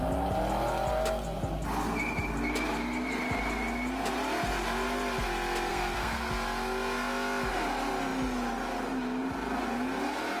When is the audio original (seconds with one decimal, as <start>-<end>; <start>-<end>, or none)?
0.0-5.7; 6.3-10.4